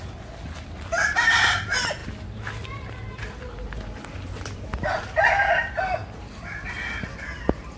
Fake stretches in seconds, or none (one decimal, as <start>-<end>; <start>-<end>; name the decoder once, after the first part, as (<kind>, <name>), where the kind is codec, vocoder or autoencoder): none